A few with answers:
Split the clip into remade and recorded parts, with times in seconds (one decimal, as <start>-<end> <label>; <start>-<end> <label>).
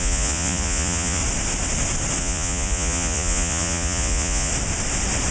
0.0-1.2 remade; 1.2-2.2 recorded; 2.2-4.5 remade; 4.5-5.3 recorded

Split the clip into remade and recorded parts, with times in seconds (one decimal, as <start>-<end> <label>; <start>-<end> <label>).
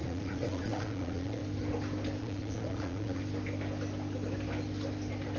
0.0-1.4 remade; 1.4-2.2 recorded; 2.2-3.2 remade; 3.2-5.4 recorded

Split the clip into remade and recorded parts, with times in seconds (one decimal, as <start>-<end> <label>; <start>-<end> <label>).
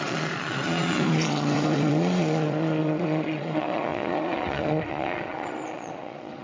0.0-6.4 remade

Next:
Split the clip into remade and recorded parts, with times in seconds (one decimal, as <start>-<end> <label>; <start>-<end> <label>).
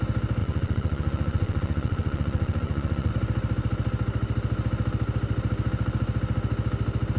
0.0-0.4 recorded; 0.4-3.1 remade; 3.1-7.2 recorded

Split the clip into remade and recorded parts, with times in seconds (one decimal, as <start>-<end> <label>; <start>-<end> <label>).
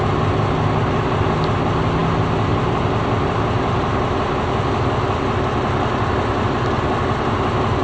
0.0-7.8 recorded